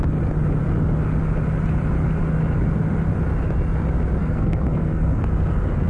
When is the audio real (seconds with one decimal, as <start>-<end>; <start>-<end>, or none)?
0.0-4.2; 5.2-5.9